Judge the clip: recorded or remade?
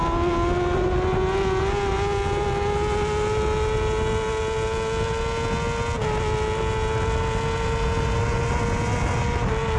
recorded